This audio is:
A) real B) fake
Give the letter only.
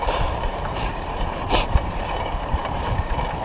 B